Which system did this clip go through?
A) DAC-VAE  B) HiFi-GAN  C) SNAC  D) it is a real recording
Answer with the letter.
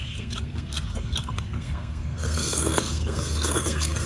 C